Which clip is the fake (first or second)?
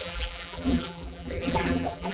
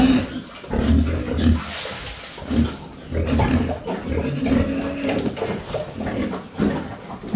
first